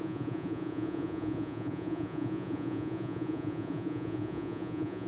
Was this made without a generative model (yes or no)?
no